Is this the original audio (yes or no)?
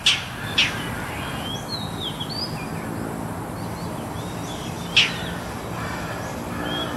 yes